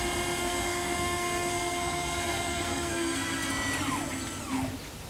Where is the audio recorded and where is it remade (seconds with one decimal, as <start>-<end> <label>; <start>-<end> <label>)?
0.0-0.4 recorded; 0.4-3.5 remade; 3.5-5.1 recorded